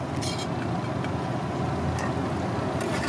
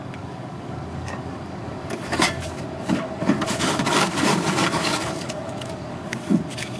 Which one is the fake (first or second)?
second